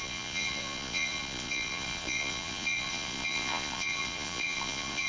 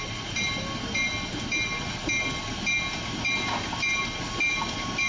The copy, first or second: first